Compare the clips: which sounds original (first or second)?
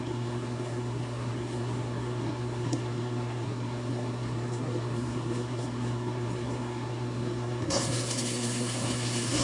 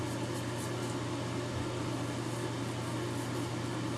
second